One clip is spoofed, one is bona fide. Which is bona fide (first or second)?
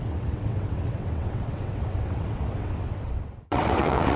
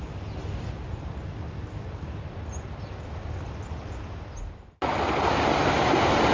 second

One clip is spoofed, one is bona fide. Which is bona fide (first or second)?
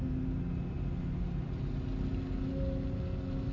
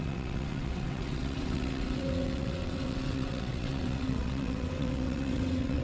first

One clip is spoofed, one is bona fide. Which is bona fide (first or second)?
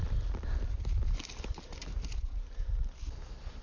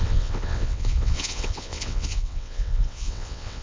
first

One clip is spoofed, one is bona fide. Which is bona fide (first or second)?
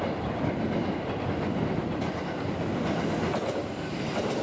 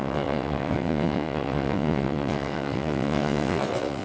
first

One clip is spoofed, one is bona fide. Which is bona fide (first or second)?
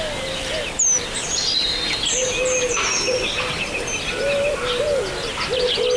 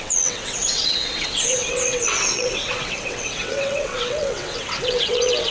first